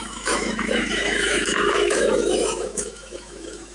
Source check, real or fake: fake